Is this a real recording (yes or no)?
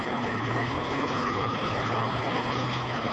no